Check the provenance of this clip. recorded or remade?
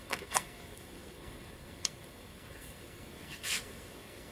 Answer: remade